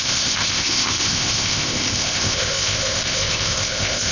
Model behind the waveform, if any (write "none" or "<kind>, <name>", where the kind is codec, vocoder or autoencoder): codec, ZipCodec